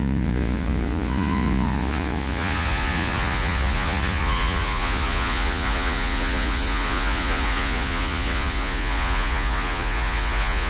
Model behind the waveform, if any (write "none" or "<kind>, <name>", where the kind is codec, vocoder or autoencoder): vocoder, Vocos